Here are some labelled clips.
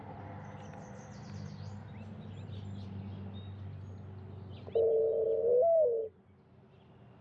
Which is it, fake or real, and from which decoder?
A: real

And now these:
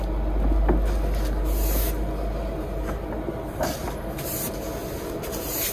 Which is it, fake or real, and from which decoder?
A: real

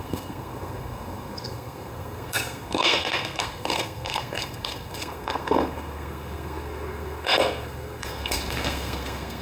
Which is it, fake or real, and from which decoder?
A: fake, codec, SNAC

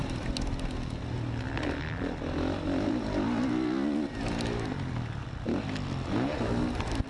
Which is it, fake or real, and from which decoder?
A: real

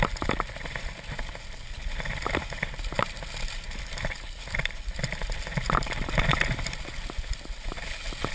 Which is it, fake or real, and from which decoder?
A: real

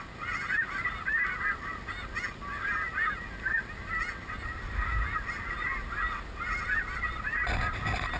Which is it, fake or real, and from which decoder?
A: real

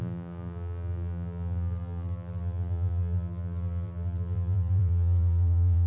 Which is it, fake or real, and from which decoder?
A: fake, vocoder, BigVGAN v2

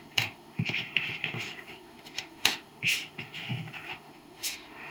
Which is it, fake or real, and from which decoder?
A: fake, autoencoder, DAC-VAE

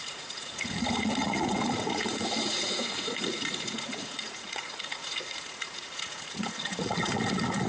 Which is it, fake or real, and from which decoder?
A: fake, vocoder, Vocos